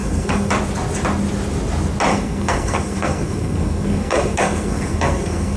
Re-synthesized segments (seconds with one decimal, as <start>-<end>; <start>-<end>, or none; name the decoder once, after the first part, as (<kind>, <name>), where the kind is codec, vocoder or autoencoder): 0.0-0.5 (codec, SNAC); 2.1-5.6